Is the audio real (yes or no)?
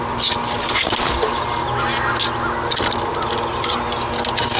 yes